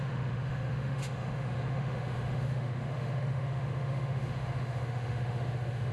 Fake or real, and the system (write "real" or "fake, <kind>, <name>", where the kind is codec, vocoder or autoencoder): fake, autoencoder, DAC-VAE